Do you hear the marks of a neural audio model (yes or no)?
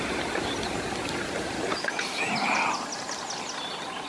no